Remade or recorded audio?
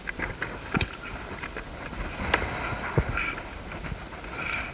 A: recorded